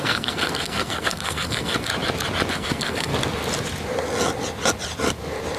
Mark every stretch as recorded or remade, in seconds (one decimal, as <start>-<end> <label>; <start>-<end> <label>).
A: 0.0-1.9 remade; 1.9-2.5 recorded; 2.5-3.1 remade; 3.1-5.6 recorded